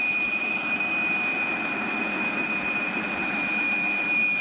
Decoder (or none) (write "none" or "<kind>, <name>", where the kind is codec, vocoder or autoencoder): none